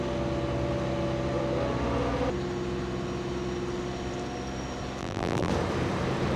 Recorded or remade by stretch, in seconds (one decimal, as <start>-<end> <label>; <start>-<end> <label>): 0.0-5.0 recorded; 5.0-5.5 remade; 5.5-6.4 recorded